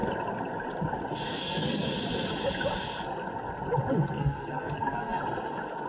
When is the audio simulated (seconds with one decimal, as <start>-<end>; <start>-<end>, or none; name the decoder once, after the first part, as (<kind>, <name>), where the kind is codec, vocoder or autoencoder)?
1.3-1.9 (codec, SNAC); 3.9-5.2